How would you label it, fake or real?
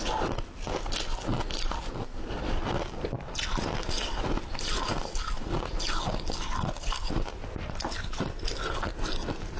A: real